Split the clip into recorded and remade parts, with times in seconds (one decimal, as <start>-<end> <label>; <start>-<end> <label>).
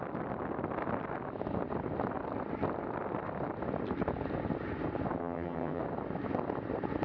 0.0-5.2 recorded; 5.2-5.8 remade; 5.8-7.0 recorded